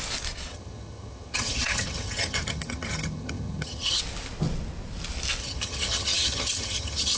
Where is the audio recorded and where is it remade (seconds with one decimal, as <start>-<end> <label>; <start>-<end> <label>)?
0.0-0.5 recorded; 0.5-4.0 remade; 4.0-5.4 recorded; 5.4-7.2 remade